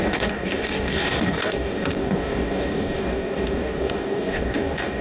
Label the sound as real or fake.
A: fake